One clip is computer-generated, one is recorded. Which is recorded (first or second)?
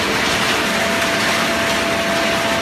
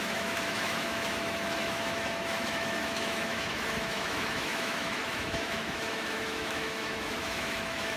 first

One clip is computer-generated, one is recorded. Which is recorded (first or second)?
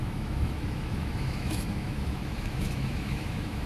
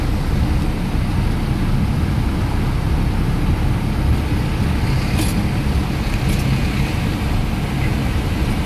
second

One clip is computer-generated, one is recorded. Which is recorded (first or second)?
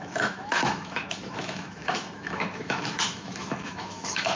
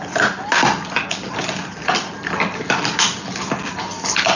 second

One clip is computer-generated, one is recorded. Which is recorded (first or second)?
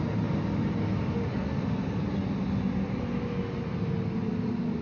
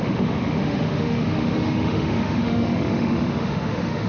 first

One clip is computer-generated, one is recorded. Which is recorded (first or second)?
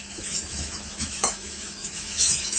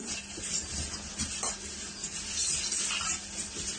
second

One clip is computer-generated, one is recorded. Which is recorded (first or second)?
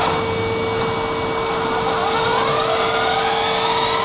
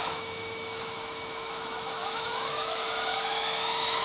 first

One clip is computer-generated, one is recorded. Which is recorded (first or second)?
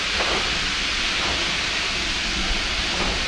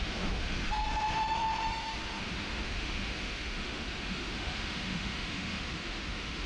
first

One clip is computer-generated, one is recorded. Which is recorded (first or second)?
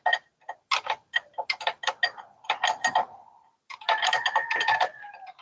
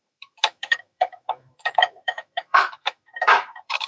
first